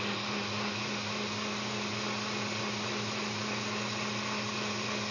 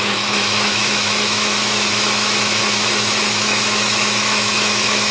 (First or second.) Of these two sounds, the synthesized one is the second